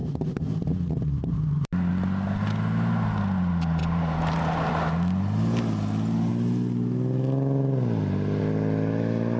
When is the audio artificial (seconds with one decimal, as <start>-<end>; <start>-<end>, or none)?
0.0-1.9; 3.8-4.7